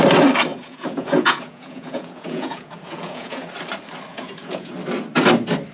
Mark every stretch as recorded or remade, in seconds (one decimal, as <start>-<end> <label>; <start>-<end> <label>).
0.0-0.5 recorded; 0.5-3.5 remade; 3.5-4.1 recorded; 4.1-4.7 remade; 4.7-5.7 recorded